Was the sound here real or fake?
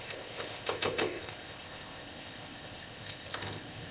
fake